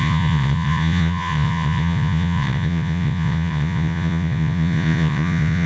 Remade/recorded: remade